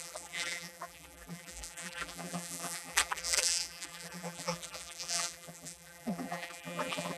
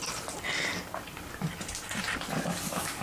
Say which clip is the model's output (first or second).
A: first